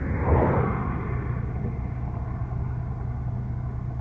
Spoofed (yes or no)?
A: no